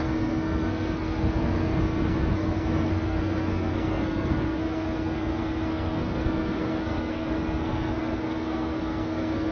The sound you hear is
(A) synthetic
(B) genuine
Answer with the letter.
A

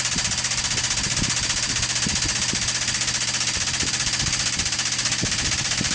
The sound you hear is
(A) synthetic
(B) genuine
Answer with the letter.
B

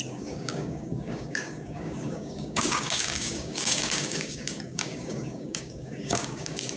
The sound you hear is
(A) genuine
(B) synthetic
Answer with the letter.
B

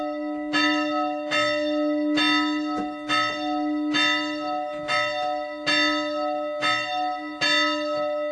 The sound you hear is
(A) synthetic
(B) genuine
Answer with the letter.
B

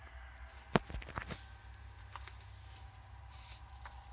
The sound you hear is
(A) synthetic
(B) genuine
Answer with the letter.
B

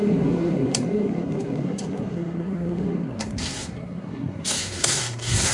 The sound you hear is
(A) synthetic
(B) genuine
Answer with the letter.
A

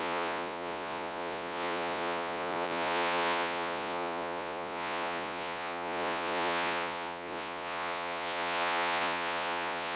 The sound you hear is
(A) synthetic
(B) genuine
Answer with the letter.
A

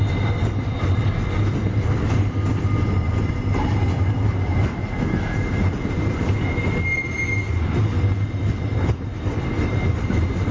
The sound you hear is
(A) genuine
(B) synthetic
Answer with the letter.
A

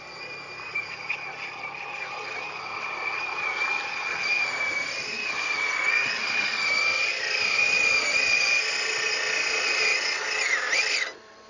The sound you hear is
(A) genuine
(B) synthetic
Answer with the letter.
A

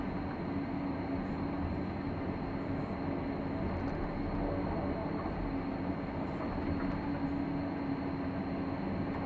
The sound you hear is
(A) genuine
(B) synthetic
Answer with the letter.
A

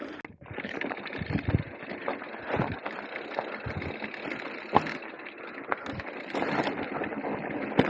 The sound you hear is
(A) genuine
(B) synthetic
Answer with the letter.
A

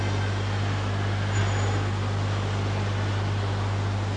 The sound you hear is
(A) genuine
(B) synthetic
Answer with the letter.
A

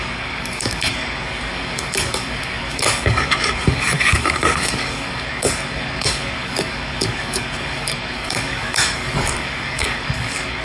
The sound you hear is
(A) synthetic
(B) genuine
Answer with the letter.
A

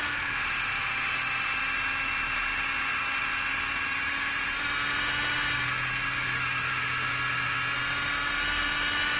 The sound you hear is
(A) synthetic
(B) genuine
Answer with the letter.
B